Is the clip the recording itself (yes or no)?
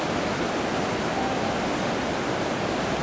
yes